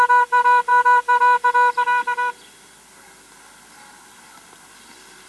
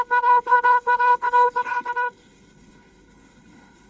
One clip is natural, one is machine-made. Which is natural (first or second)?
first